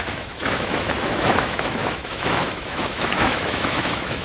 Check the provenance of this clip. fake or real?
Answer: fake